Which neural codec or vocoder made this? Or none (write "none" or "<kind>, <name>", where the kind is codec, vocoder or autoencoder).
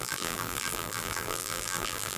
vocoder, BigVGAN v2